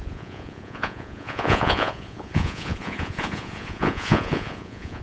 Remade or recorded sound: remade